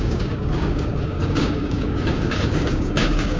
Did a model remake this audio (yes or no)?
yes